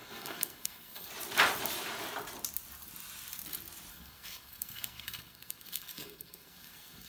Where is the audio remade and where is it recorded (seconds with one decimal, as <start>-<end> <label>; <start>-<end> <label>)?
0.0-1.1 remade; 1.1-3.9 recorded; 3.9-7.1 remade